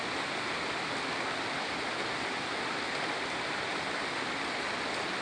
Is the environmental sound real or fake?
real